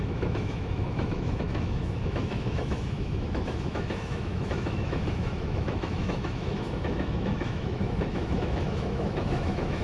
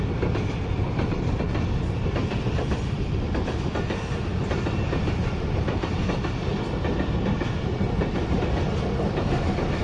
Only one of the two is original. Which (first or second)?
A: second